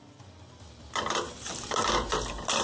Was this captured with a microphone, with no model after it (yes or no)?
yes